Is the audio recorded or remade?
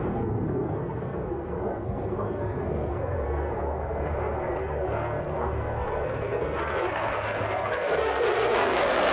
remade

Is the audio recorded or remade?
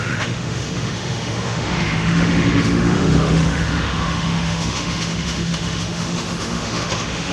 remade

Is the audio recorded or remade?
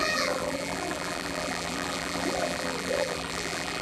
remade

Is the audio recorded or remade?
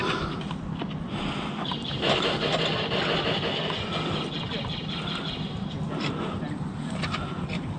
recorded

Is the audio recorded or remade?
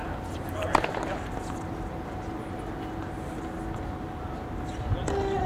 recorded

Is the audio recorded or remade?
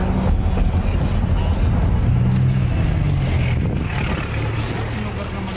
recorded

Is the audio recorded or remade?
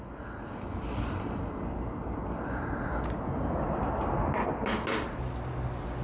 recorded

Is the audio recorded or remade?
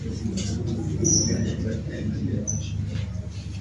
recorded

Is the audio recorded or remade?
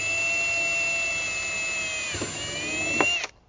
recorded